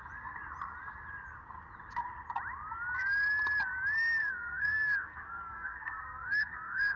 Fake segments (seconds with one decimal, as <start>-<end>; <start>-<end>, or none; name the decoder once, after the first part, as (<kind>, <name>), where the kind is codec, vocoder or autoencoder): 4.2-7.0 (codec, SNAC)